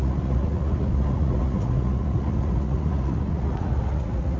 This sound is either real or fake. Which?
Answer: fake